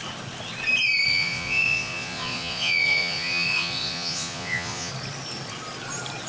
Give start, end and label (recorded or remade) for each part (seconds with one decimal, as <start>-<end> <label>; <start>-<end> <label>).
0.0-1.1 recorded; 1.1-4.9 remade; 4.9-6.3 recorded